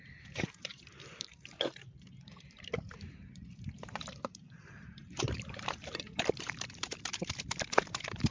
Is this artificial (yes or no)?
yes